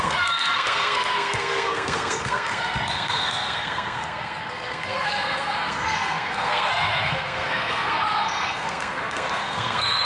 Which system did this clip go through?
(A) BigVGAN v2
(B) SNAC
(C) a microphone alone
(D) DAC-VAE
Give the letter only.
B